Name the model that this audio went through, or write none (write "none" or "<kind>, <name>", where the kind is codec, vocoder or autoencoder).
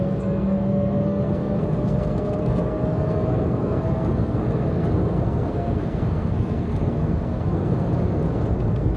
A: codec, SNAC